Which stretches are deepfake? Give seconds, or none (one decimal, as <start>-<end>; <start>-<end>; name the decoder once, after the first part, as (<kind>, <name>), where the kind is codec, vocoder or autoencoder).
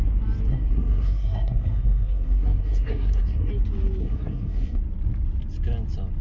0.5-3.5 (codec, SNAC); 4.0-4.8